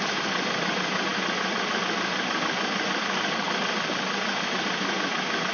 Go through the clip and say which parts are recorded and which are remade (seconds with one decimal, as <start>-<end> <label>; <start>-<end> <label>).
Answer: 0.0-5.5 remade